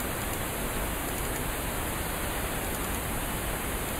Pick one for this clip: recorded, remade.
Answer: recorded